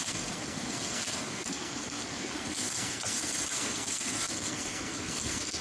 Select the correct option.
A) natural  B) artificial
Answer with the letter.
B